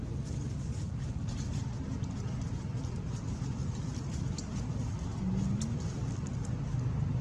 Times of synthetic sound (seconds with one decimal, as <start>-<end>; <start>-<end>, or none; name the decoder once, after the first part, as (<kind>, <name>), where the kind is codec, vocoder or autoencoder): 3.6-4.2 (vocoder, BigVGAN v2)